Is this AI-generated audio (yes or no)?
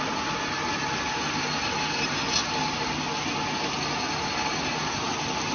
no